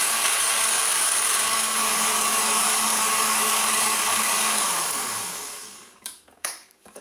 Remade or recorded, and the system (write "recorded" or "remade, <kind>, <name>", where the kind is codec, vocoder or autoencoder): remade, codec, DAC